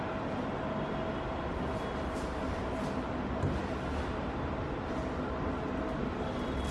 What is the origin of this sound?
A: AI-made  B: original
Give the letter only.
B